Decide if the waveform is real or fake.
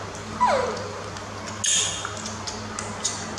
real